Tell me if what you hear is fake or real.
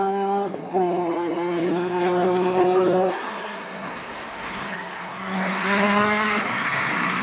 fake